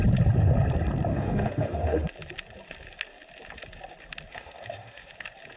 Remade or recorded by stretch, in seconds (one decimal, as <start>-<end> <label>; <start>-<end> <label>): 0.0-1.1 recorded; 1.1-2.1 remade; 2.1-4.3 recorded; 4.3-5.1 remade; 5.1-5.6 recorded